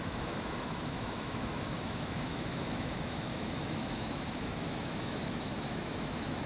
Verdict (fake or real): fake